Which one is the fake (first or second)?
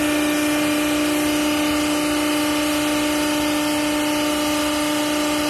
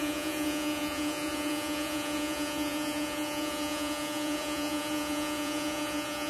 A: second